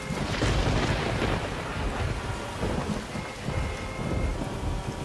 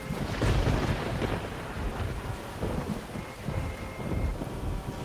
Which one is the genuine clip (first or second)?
first